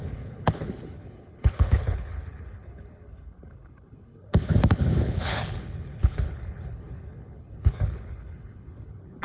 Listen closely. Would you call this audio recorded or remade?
remade